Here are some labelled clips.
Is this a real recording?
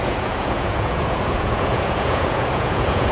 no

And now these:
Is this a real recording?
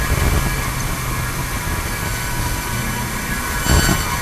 yes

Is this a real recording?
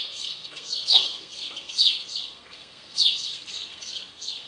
no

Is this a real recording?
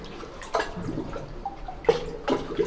yes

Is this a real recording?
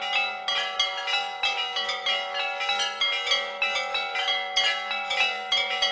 yes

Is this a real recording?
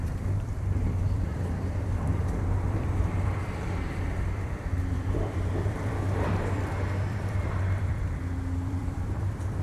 no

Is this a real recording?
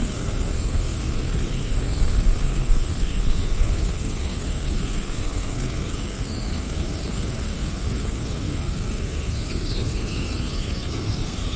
no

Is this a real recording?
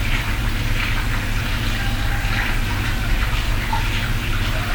yes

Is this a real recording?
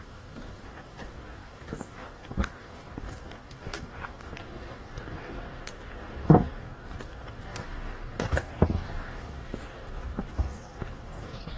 no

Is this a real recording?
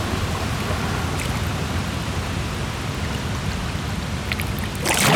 yes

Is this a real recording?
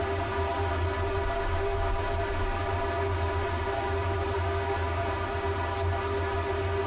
yes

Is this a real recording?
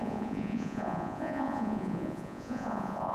no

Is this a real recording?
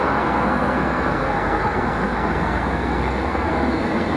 no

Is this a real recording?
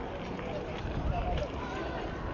yes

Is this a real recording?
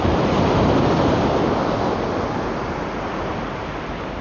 yes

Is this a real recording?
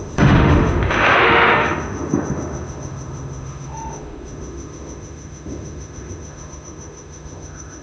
no